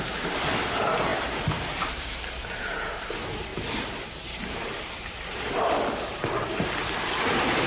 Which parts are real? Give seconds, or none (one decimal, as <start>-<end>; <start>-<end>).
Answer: 0.0-1.1; 2.5-7.7